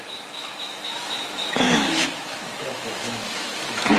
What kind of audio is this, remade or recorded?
remade